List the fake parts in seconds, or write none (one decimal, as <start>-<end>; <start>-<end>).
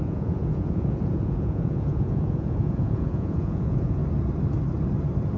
0.0-4.0